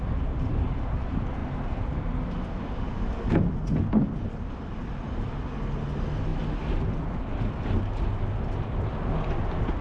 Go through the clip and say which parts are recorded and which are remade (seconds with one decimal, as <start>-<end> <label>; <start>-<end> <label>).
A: 0.0-9.8 recorded